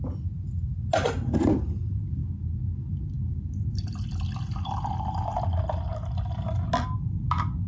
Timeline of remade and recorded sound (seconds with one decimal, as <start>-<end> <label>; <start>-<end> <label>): 0.0-7.7 recorded